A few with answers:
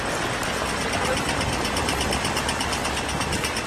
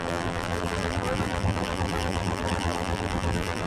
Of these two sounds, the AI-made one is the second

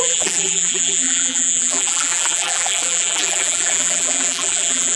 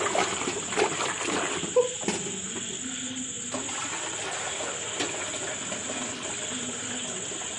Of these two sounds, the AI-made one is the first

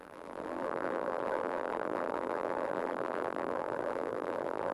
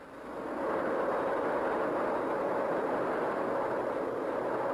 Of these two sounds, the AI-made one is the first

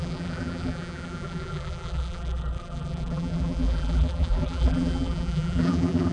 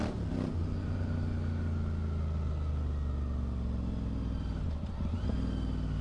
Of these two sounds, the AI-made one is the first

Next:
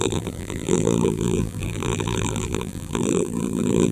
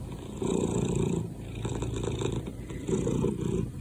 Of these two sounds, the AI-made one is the first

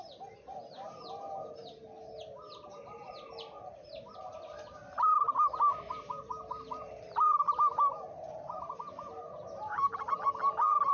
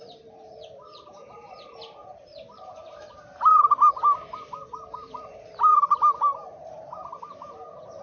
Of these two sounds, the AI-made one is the second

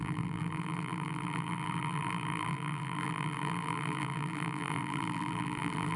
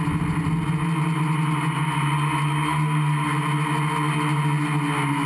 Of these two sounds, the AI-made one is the first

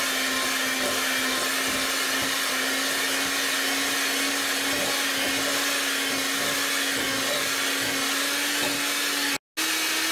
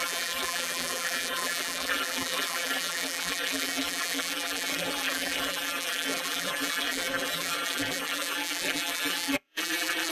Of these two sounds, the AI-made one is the second